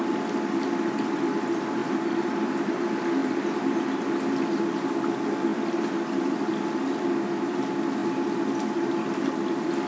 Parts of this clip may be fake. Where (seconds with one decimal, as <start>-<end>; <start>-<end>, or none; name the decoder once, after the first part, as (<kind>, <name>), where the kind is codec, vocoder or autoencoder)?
1.8-2.7 (vocoder, BigVGAN v2); 3.2-3.8; 5.5-7.1